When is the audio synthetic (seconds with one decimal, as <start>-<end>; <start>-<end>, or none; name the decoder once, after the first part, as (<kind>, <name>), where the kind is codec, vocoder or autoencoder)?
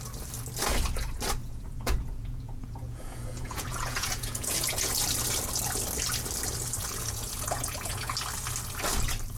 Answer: 1.4-5.0 (vocoder, Vocos); 6.8-8.1